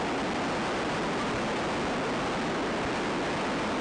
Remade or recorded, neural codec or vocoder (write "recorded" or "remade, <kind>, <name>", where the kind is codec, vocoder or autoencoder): recorded